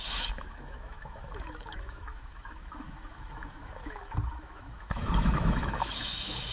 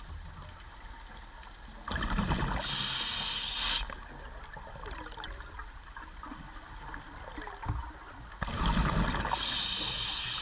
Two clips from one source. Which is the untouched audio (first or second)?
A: second